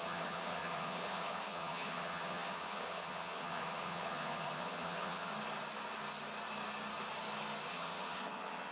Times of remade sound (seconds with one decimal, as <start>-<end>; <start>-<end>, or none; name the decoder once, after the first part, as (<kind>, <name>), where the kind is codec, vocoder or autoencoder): 0.0-5.3 (vocoder, HiFi-GAN); 7.7-8.7